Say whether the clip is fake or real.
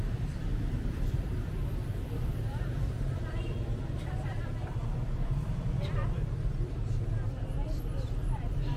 fake